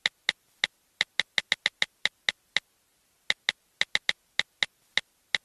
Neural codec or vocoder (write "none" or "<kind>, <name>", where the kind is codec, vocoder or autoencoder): none